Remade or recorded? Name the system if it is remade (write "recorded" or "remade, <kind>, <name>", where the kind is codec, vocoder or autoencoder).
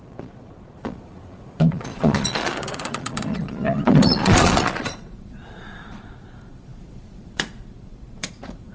remade, vocoder, Vocos